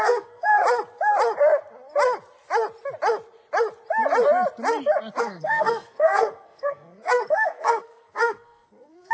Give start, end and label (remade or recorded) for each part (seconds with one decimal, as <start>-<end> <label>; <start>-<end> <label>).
0.0-0.6 remade; 0.6-5.2 recorded; 5.2-9.1 remade